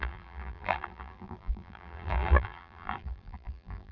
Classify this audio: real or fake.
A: fake